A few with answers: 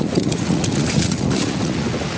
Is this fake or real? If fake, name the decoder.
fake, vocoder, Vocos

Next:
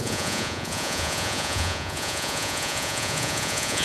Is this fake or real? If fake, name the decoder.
fake, vocoder, Vocos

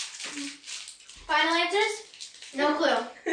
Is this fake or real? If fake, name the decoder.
real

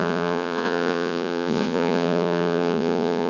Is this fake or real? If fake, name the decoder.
fake, vocoder, Vocos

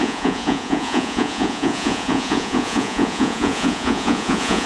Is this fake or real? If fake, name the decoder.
fake, vocoder, Vocos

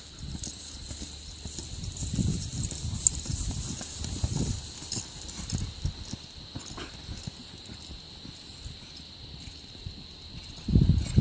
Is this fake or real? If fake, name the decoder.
real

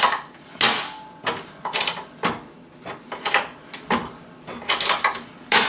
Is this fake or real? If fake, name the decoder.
real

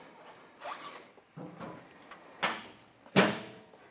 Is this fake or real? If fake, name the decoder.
real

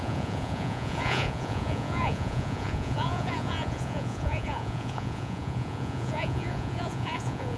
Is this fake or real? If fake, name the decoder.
fake, vocoder, Vocos